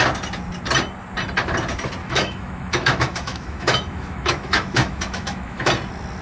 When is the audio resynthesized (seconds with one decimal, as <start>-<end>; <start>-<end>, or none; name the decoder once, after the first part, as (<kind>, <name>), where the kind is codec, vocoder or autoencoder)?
2.0-5.7 (autoencoder, DAC-VAE)